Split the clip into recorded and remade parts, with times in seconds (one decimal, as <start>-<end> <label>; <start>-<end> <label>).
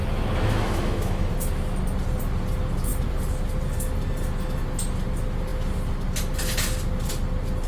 0.0-1.3 remade; 1.3-7.7 recorded